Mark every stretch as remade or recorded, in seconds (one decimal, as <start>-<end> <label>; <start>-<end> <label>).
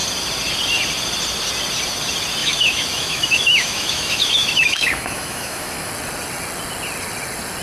0.0-2.4 recorded; 2.4-5.9 remade; 5.9-7.6 recorded